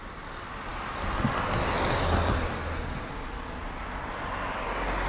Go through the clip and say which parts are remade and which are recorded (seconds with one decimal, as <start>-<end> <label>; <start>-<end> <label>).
0.0-5.1 recorded